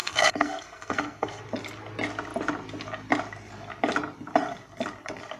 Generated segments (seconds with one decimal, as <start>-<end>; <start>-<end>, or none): 0.0-1.4